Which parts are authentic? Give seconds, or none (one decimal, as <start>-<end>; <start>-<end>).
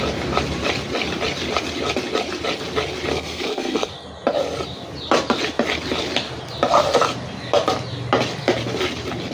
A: 0.0-3.1; 3.9-9.3